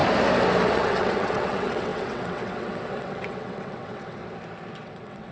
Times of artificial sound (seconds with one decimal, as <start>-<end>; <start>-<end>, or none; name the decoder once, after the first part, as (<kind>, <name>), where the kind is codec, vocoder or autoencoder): 0.7-4.2 (vocoder, WaveNeXt); 4.7-5.3